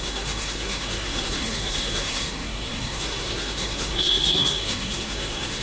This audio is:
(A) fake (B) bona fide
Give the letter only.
A